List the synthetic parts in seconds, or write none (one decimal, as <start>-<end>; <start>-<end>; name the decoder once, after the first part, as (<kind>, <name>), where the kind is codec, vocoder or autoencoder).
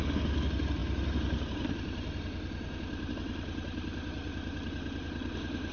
none